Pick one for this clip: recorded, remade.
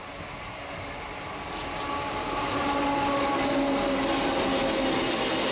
recorded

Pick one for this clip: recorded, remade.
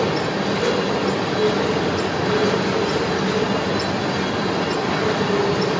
recorded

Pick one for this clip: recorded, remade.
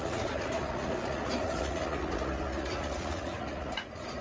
remade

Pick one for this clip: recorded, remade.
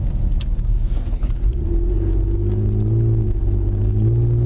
recorded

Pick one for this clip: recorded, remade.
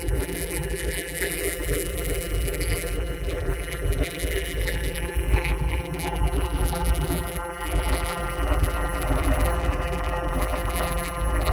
remade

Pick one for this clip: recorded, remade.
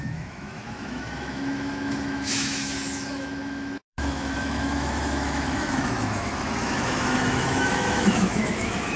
remade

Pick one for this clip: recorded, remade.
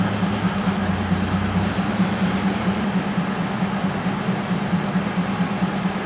recorded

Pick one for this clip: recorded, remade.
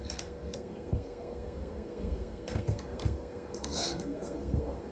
remade